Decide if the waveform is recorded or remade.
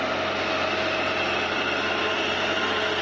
recorded